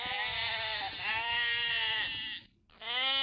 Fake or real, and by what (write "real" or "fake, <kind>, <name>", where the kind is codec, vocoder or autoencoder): real